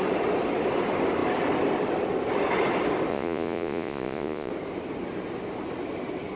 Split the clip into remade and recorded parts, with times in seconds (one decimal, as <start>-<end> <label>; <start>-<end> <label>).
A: 0.0-3.1 recorded; 3.1-4.5 remade; 4.5-6.4 recorded